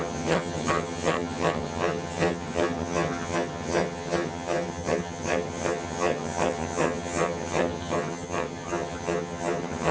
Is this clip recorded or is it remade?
remade